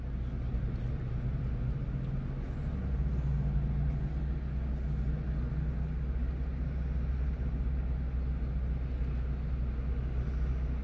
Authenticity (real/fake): real